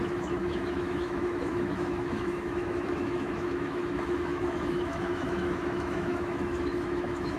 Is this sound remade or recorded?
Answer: remade